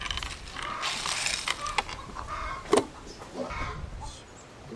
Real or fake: real